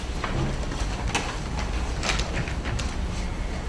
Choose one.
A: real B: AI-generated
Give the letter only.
A